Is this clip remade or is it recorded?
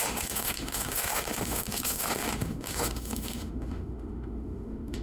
remade